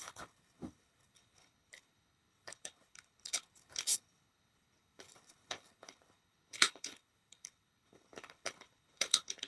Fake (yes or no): yes